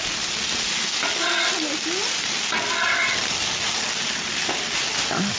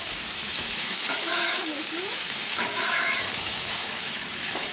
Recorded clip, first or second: first